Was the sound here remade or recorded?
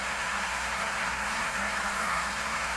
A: remade